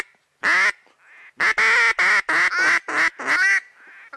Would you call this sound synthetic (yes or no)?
no